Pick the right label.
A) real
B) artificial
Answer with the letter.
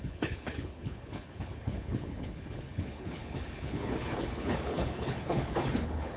B